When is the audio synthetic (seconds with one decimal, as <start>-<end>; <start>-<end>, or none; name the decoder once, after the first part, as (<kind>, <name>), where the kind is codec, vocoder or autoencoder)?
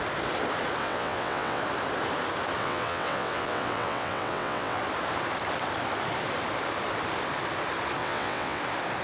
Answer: 0.8-1.6 (vocoder, WaveNeXt); 2.6-4.8; 8.0-8.6